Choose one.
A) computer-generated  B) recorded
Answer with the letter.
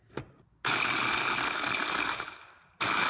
B